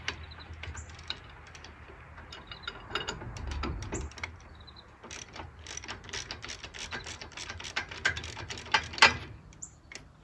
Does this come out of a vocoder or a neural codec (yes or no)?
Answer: no